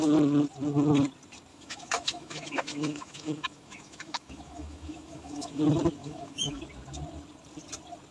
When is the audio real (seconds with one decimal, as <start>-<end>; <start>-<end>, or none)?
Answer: 0.0-1.5; 5.6-6.0; 6.6-8.1